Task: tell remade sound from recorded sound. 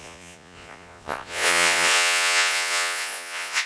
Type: remade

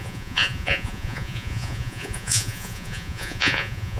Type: remade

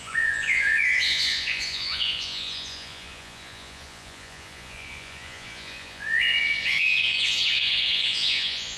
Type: remade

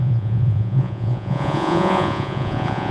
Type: remade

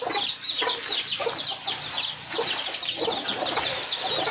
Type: recorded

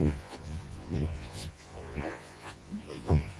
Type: remade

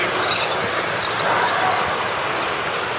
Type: recorded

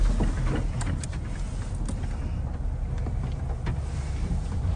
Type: recorded